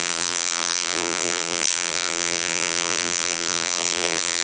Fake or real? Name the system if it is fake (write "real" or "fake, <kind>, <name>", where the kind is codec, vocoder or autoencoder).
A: fake, vocoder, BigVGAN v2